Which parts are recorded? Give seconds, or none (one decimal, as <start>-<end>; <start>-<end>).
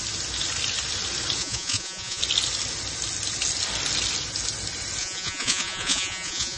0.0-1.4; 2.2-5.0